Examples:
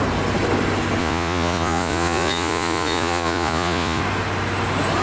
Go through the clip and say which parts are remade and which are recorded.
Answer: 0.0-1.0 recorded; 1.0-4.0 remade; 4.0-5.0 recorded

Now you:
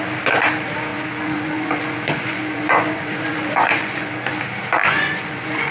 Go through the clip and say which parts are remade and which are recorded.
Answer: 0.0-0.9 recorded; 0.9-4.3 remade; 4.3-4.8 recorded; 4.8-5.7 remade

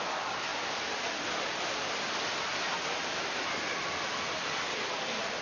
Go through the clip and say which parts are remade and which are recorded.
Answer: 0.0-5.4 recorded

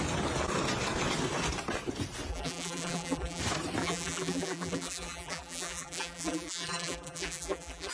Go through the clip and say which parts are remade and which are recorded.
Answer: 0.0-2.3 recorded; 2.3-3.4 remade; 3.4-3.8 recorded; 3.8-7.9 remade

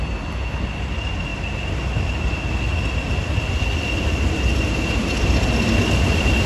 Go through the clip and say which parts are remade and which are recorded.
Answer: 0.0-1.3 recorded; 1.3-2.2 remade; 2.2-3.2 recorded; 3.2-4.6 remade; 4.6-6.5 recorded

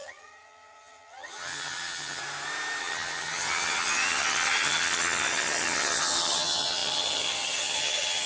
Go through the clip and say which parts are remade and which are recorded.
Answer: 0.0-2.2 remade; 2.2-2.8 recorded; 2.8-8.3 remade